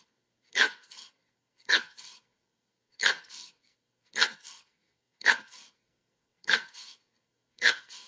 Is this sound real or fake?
fake